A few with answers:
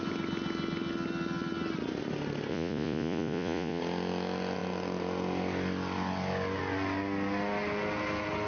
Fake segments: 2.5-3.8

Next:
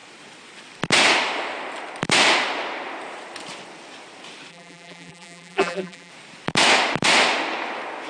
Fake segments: 4.5-6.1

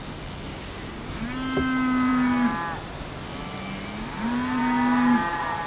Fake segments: 0.5-1.2

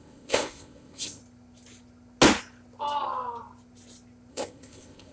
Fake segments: 0.0-1.2; 4.3-5.1